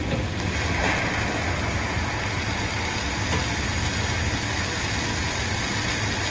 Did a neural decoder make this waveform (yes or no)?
no